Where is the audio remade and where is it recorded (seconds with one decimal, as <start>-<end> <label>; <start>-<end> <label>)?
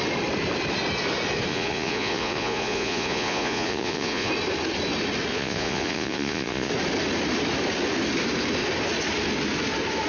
0.0-1.5 recorded; 1.5-4.3 remade; 4.3-5.3 recorded; 5.3-6.7 remade; 6.7-10.1 recorded